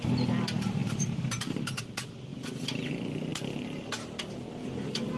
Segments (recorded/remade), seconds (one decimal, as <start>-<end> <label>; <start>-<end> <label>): 0.0-5.2 recorded